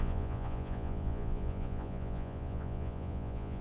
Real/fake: fake